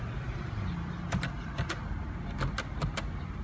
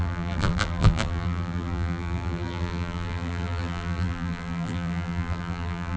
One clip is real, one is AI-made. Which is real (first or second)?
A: first